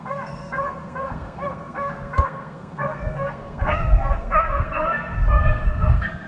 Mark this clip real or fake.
fake